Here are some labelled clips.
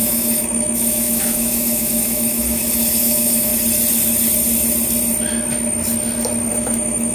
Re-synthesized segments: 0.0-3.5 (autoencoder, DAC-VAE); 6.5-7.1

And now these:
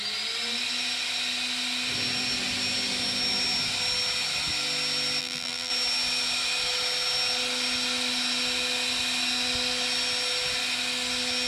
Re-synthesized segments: 5.2-5.7 (vocoder, BigVGAN v2)

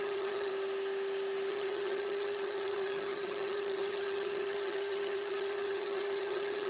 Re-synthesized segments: 0.0-0.5 (vocoder, HiFi-GAN); 1.5-6.7

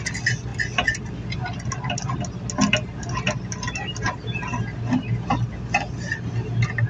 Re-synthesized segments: none

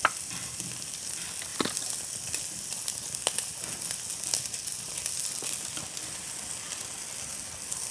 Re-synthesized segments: none

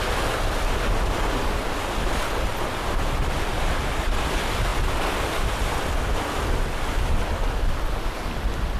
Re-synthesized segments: none